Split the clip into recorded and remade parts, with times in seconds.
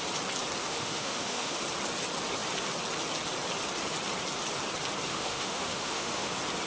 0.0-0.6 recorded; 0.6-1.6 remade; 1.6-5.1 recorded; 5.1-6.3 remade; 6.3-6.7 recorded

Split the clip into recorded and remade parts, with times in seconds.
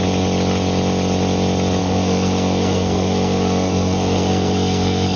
0.0-1.8 recorded; 1.8-5.2 remade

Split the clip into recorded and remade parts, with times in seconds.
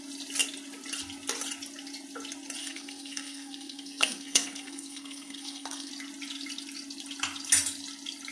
0.0-2.6 recorded; 2.6-5.9 remade; 5.9-8.3 recorded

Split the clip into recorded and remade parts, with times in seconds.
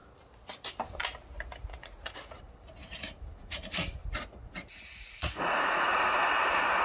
0.0-1.6 recorded; 1.6-2.4 remade; 2.4-4.0 recorded; 4.0-6.0 remade; 6.0-6.8 recorded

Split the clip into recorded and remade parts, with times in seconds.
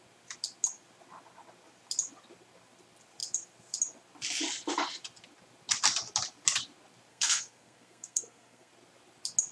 0.0-7.1 recorded; 7.1-8.7 remade; 8.7-9.5 recorded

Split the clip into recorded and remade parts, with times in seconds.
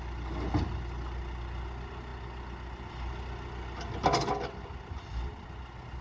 0.0-6.0 recorded